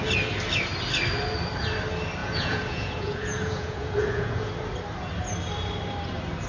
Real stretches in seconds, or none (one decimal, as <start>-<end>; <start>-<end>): 0.0-2.2; 4.5-6.5